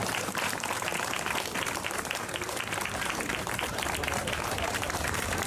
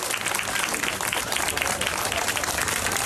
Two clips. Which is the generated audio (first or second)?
first